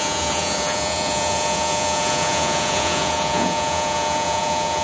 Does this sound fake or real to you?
fake